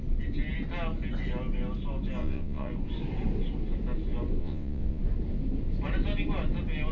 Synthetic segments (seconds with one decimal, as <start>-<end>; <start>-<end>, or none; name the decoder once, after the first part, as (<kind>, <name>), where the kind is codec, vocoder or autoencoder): 2.2-2.7 (vocoder, WaveNeXt); 4.4-5.0